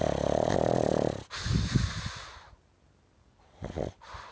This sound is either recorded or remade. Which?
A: recorded